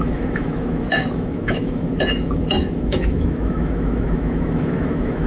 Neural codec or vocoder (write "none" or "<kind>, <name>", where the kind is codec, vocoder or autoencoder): autoencoder, DAC-VAE